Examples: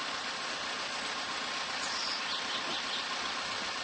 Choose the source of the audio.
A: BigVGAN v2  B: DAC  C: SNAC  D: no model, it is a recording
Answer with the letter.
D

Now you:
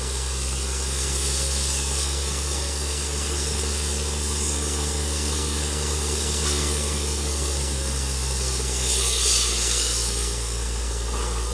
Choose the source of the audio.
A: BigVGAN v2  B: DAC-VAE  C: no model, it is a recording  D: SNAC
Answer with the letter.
D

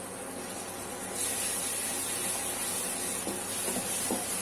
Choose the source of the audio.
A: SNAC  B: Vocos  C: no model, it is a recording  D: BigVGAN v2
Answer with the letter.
C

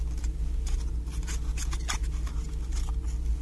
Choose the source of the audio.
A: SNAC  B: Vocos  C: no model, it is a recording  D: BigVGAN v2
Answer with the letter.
C